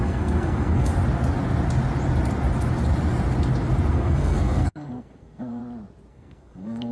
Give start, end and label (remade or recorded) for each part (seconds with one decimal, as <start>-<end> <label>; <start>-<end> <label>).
0.0-0.9 remade; 0.9-3.9 recorded; 3.9-5.6 remade; 5.6-6.1 recorded; 6.1-6.9 remade